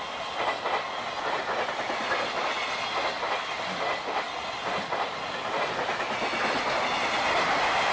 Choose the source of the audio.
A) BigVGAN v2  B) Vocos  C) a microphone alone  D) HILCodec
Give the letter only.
C